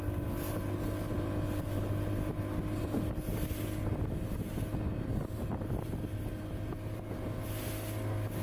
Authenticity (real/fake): real